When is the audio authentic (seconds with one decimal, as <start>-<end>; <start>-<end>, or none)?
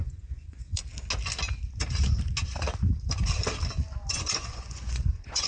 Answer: 0.8-4.1